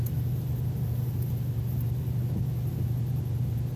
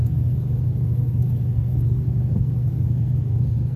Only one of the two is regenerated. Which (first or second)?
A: second